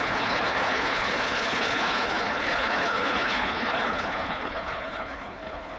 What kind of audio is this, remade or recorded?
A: remade